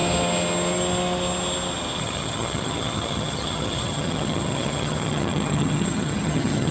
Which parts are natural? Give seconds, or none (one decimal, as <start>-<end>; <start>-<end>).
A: 0.0-2.0